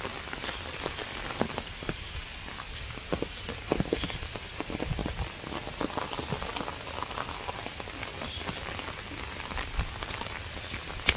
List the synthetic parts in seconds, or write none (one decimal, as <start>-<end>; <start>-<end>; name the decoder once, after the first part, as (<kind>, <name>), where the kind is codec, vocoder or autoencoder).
none